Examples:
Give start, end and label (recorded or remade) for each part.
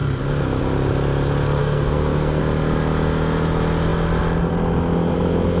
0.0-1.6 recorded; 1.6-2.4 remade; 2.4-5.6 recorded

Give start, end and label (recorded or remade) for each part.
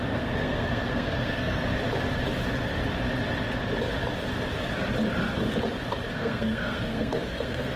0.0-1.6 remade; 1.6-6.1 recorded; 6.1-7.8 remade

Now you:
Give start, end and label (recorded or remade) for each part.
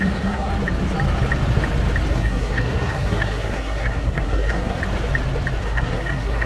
0.0-0.5 remade; 0.5-2.1 recorded; 2.1-4.8 remade; 4.8-5.6 recorded; 5.6-6.5 remade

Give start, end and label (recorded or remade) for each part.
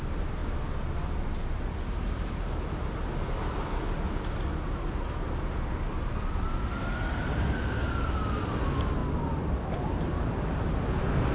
0.0-11.3 recorded